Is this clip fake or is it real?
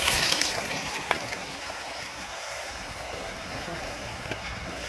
fake